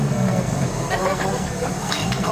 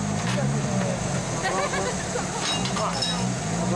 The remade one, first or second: first